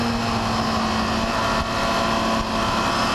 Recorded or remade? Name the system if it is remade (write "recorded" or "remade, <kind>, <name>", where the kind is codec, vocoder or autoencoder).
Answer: recorded